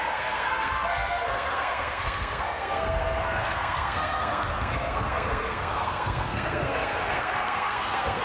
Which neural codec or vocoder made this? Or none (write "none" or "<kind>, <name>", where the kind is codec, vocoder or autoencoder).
codec, SNAC